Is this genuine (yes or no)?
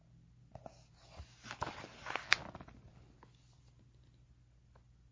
yes